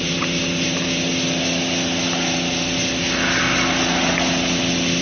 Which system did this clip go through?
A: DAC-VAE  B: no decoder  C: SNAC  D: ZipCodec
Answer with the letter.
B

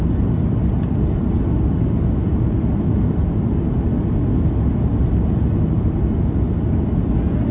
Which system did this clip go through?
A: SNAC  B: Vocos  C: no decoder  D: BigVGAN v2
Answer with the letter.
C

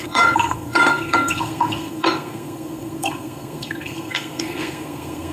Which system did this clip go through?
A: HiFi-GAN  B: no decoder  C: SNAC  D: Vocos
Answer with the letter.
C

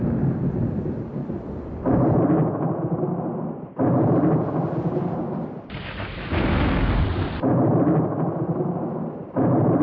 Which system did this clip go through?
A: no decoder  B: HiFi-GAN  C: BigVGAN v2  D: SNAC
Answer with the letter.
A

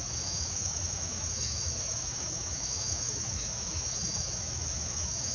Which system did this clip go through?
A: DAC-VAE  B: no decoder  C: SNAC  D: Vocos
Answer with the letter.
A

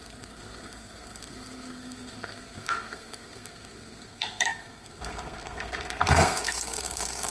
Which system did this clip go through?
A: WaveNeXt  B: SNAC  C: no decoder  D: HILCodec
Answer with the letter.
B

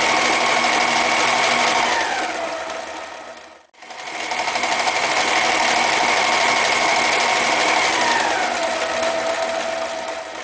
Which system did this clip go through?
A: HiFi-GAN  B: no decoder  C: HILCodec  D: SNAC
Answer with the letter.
B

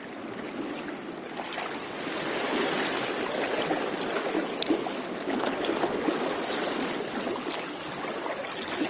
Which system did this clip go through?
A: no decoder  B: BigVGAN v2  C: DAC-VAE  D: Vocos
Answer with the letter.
A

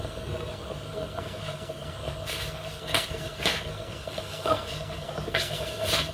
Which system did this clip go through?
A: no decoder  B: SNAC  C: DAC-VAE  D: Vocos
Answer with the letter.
B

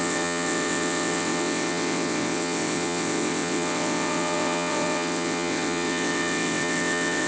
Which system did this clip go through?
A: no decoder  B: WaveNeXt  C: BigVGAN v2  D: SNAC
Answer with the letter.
B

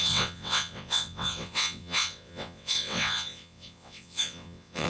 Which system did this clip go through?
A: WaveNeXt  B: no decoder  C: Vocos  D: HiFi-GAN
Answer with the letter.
A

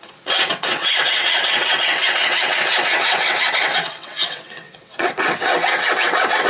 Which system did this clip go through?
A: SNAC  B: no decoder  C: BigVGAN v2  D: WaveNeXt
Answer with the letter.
D